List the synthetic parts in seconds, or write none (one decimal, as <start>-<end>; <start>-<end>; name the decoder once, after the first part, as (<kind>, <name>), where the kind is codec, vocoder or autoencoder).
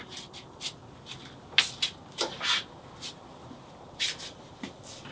0.0-0.8 (vocoder, BigVGAN v2); 3.9-5.1